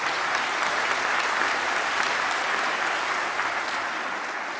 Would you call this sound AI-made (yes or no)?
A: no